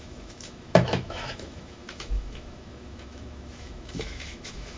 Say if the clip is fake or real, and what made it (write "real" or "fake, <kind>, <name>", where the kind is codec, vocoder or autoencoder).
fake, autoencoder, DAC-VAE